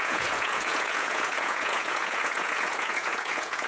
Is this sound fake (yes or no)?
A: yes